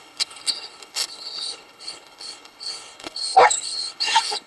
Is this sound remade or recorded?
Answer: remade